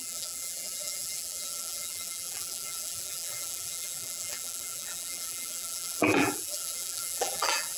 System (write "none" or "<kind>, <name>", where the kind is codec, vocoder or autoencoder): vocoder, BigVGAN v2